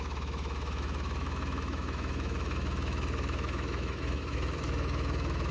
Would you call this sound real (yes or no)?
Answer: no